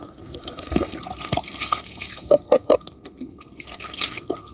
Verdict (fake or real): fake